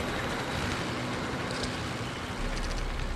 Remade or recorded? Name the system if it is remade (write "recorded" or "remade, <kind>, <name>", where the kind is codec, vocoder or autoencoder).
recorded